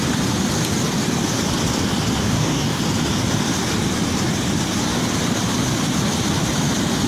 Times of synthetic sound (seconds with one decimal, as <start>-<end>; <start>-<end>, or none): 2.2-2.8